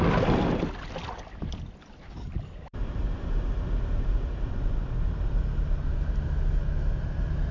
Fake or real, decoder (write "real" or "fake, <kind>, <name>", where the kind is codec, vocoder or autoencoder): real